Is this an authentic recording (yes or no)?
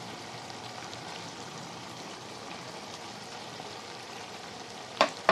no